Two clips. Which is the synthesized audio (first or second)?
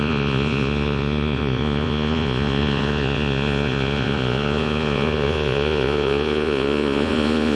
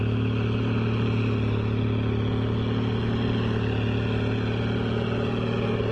first